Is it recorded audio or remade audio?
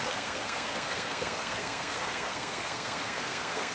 remade